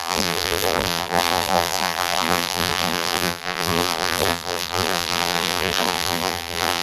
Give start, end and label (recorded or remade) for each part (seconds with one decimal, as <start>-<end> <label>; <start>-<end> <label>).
0.0-6.8 remade